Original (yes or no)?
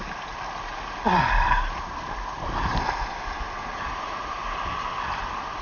yes